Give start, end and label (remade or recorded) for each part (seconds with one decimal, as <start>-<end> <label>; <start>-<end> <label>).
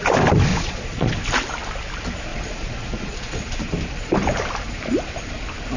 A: 0.0-0.5 recorded; 0.5-1.1 remade; 1.1-2.3 recorded; 2.3-3.6 remade; 3.6-5.8 recorded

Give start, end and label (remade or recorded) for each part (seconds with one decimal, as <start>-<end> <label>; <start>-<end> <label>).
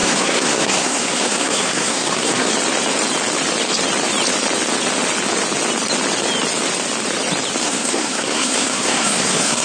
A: 0.0-2.5 remade; 2.5-7.6 recorded; 7.6-9.6 remade